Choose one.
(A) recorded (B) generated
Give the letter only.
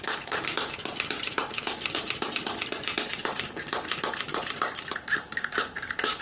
B